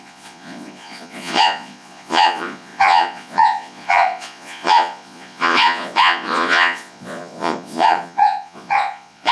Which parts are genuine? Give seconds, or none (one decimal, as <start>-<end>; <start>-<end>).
none